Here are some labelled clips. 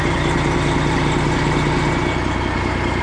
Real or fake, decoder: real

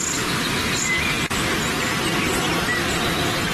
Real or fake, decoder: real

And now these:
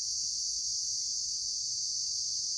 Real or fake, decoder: real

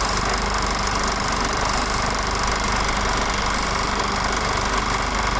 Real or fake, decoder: real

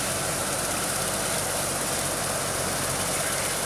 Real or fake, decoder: real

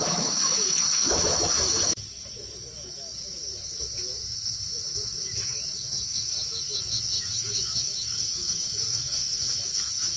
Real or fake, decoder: fake, autoencoder, DAC-VAE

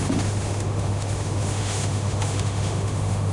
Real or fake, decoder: fake, autoencoder, DAC-VAE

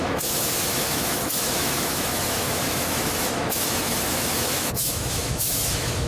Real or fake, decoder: fake, autoencoder, DAC-VAE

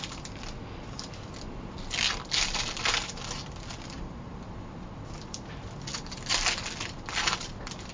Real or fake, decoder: real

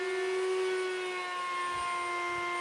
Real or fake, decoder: real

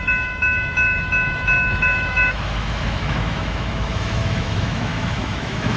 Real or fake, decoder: fake, autoencoder, DAC-VAE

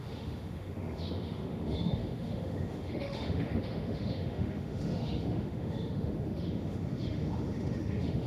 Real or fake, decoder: fake, autoencoder, DAC-VAE